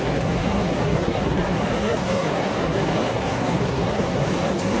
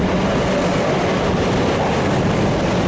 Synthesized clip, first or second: first